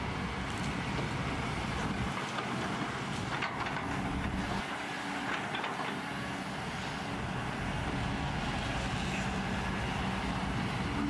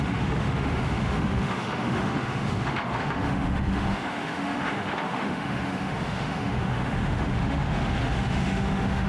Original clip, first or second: first